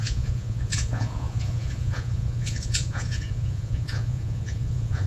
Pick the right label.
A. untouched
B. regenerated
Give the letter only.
B